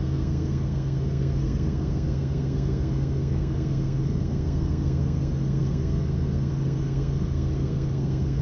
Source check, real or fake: fake